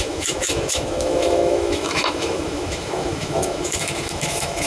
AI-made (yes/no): yes